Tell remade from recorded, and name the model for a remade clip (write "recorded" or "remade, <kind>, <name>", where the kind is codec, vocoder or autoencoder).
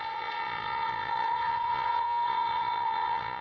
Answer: remade, vocoder, Vocos